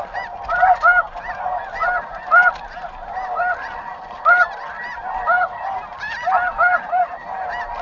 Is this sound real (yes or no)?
yes